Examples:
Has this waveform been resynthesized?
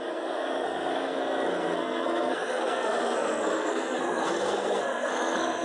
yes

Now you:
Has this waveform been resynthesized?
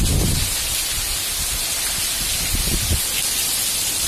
no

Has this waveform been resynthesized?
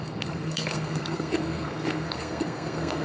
yes